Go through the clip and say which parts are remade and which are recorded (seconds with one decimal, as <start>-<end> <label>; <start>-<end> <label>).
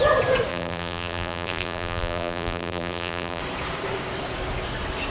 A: 0.0-0.5 recorded; 0.5-3.4 remade; 3.4-5.1 recorded